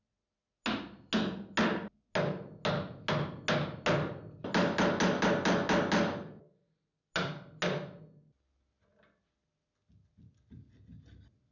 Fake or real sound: real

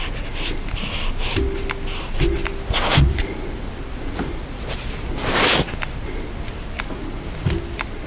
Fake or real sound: real